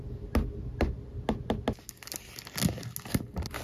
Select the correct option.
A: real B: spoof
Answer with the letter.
A